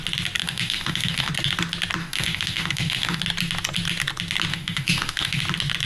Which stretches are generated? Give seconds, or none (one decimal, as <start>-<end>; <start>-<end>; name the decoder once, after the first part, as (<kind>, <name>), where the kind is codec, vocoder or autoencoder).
0.4-1.3 (autoencoder, DAC-VAE); 2.0-3.2; 4.5-5.4